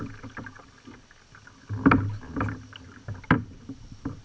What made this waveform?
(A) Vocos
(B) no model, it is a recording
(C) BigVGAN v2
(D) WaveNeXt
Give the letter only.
B